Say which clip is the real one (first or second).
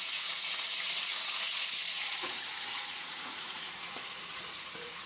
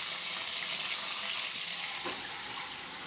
second